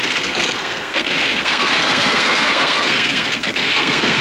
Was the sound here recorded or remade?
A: remade